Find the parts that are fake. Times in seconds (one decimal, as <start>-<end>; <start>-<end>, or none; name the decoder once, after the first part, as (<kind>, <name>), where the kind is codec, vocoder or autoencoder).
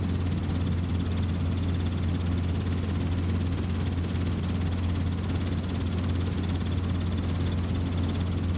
none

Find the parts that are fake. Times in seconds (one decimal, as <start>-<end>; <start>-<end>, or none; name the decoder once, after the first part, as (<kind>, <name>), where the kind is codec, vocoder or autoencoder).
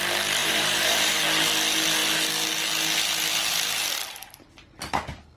0.4-1.2 (vocoder, BigVGAN v2)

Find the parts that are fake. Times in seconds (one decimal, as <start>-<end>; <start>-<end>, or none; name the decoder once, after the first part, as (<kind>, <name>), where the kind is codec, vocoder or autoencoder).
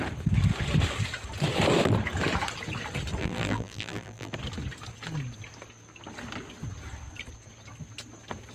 3.2-4.3 (vocoder, BigVGAN v2)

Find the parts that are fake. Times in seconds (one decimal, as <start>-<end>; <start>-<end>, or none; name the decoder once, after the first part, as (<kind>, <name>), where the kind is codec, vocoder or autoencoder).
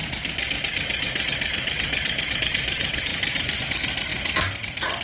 2.4-4.1 (vocoder, BigVGAN v2)